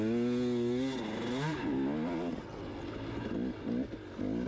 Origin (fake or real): real